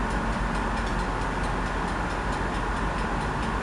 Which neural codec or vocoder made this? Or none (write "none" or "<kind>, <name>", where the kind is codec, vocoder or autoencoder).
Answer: none